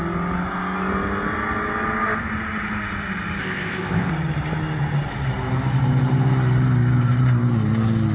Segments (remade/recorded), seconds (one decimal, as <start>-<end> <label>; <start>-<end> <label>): 0.0-3.4 recorded; 3.4-4.1 remade; 4.1-8.1 recorded